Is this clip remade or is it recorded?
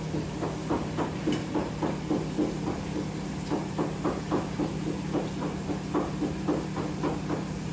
recorded